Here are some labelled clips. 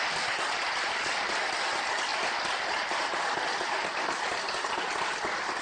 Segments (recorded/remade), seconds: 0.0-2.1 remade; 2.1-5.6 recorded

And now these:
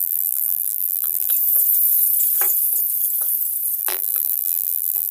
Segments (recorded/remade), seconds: 0.0-1.3 remade; 1.3-3.8 recorded; 3.8-5.1 remade

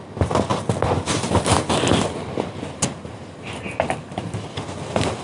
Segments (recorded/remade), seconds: 0.0-5.2 recorded

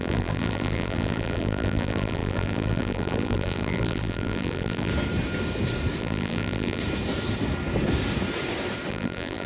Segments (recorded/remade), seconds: 0.0-4.9 remade; 4.9-6.0 recorded; 6.0-6.8 remade; 6.8-8.9 recorded; 8.9-9.5 remade